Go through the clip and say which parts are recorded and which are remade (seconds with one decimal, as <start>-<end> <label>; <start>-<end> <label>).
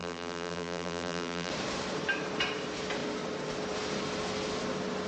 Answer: 0.0-1.5 remade; 1.5-5.1 recorded